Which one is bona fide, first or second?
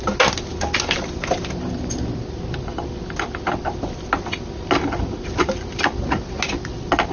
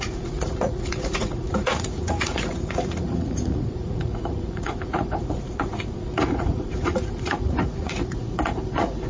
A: first